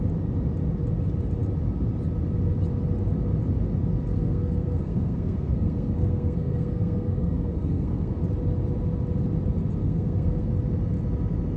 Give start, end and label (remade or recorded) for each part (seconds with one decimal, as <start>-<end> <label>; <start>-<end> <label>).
0.0-4.1 recorded; 4.1-8.1 remade; 8.1-9.8 recorded; 9.8-10.5 remade; 10.5-11.6 recorded